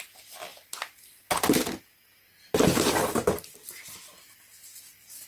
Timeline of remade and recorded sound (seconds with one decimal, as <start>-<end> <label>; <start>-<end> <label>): 0.0-5.3 recorded